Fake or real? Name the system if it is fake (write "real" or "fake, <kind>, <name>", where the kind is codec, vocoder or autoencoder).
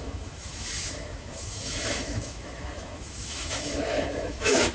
fake, autoencoder, DAC-VAE